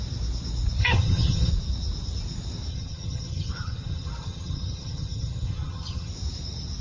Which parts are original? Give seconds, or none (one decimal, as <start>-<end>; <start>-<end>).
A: 0.0-0.8; 1.5-2.7; 6.1-6.8